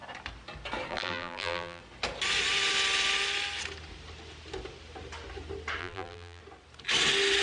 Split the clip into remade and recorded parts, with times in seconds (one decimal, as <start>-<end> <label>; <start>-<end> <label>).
0.0-0.9 recorded; 0.9-1.8 remade; 1.8-5.8 recorded; 5.8-6.4 remade; 6.4-7.4 recorded